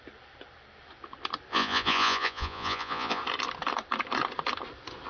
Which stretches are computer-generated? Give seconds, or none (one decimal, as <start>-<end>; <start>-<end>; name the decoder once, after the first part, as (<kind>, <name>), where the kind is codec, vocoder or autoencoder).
1.5-3.2 (vocoder, Vocos)